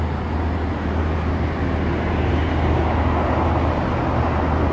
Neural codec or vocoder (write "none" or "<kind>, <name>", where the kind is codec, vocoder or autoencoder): none